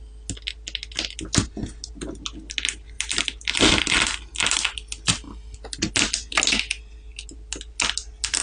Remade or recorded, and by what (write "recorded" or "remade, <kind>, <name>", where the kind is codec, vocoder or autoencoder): recorded